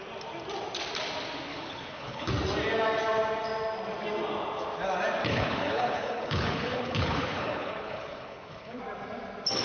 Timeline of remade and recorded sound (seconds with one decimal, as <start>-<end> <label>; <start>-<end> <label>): 0.0-1.5 recorded; 1.5-2.3 remade; 2.3-5.2 recorded; 5.2-8.8 remade; 8.8-9.6 recorded